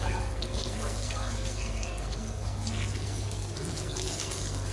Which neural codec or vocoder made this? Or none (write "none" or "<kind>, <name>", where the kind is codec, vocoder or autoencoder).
codec, SNAC